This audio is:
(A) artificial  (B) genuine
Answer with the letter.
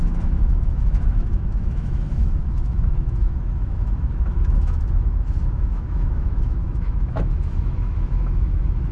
A